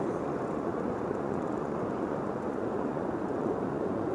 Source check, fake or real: fake